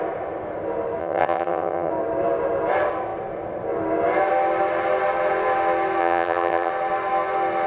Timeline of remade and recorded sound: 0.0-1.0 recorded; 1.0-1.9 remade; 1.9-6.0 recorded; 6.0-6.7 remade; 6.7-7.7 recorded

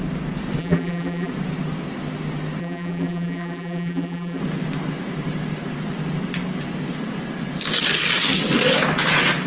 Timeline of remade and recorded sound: 0.0-0.6 recorded; 0.6-1.3 remade; 1.3-2.6 recorded; 2.6-4.4 remade; 4.4-9.5 recorded

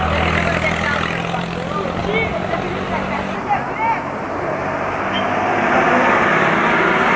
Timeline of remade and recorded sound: 0.0-7.2 recorded

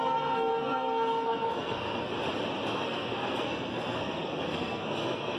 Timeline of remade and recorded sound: 0.0-2.1 remade; 2.1-2.7 recorded; 2.7-5.4 remade

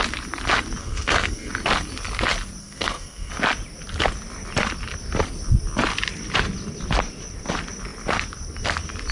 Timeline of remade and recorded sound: 0.0-0.8 recorded; 0.8-1.5 remade; 1.5-2.6 recorded; 2.6-3.3 remade; 3.3-9.1 recorded

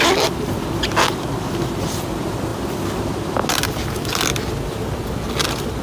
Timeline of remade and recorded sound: 0.0-5.8 recorded